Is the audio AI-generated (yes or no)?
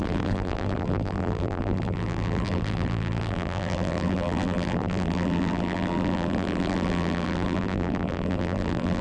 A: yes